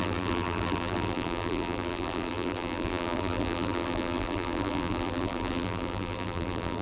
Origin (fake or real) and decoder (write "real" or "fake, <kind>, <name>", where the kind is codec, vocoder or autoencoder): fake, vocoder, BigVGAN v2